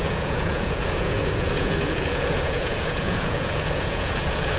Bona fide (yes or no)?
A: no